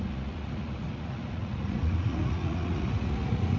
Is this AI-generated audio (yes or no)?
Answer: yes